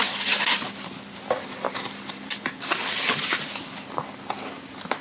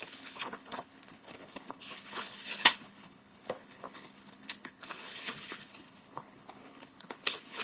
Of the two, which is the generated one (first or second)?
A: second